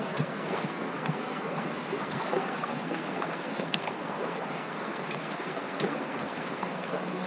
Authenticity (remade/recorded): remade